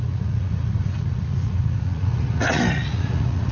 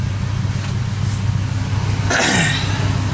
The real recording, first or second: second